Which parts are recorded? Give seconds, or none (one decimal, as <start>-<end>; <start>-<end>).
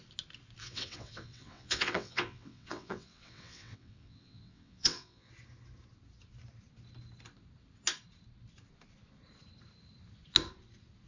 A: 0.0-0.6; 5.3-11.1